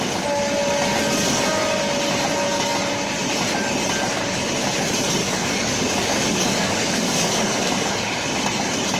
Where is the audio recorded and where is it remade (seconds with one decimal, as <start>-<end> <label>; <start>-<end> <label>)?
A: 0.0-5.2 recorded; 5.2-8.3 remade; 8.3-9.0 recorded